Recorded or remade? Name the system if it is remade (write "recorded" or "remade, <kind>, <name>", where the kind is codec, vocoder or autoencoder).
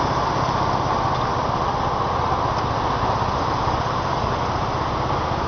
recorded